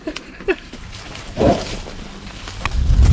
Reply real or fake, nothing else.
fake